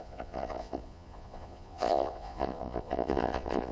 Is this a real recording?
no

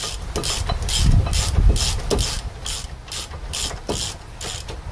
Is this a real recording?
yes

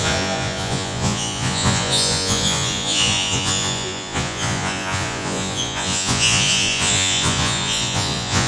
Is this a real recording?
no